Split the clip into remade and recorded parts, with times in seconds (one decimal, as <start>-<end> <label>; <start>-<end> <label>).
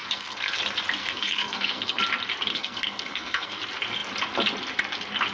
0.0-0.6 remade; 0.6-1.0 recorded; 1.0-2.0 remade; 2.0-2.5 recorded; 2.5-3.6 remade; 3.6-5.3 recorded